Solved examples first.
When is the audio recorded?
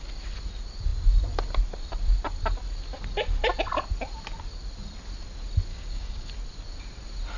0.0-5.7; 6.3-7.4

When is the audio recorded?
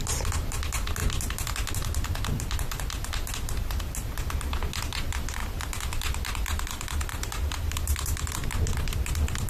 0.0-9.5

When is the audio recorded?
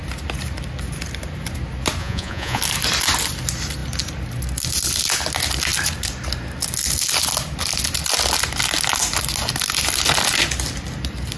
0.0-2.0; 2.6-11.4